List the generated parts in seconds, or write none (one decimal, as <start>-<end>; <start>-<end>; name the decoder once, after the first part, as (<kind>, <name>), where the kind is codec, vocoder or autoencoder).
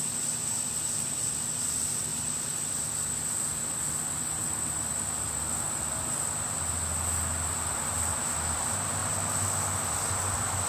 0.0-10.7 (vocoder, BigVGAN v2)